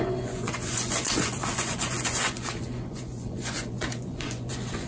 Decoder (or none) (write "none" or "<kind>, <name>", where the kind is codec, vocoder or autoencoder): vocoder, Vocos